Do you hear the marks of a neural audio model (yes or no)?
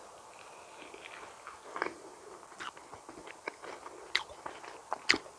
no